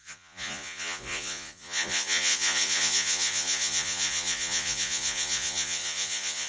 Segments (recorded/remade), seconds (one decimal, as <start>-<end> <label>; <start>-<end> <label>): 0.0-6.5 remade